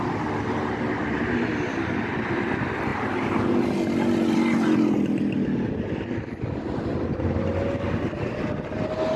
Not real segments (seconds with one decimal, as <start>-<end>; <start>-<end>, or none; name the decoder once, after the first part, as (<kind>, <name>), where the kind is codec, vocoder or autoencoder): none